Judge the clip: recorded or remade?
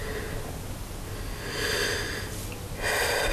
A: recorded